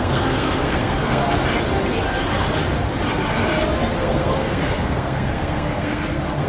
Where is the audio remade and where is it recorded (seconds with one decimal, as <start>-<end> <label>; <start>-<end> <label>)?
0.0-1.2 remade; 1.2-4.0 recorded; 4.0-6.5 remade